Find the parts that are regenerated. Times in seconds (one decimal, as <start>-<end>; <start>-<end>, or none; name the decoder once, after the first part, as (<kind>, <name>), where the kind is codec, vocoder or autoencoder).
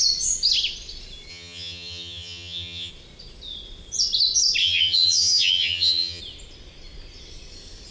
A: 1.3-2.9 (vocoder, HiFi-GAN); 4.6-6.2